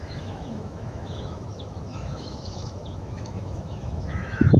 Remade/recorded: remade